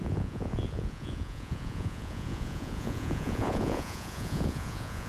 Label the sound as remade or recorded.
remade